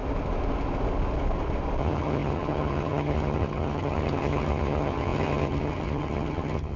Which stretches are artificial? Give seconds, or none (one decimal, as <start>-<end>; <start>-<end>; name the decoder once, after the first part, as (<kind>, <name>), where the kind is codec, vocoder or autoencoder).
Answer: 1.8-6.8 (vocoder, HiFi-GAN)